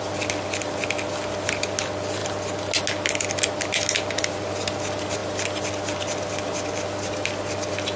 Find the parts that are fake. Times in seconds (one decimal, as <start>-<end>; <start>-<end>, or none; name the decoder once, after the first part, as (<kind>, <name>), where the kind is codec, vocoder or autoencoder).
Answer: none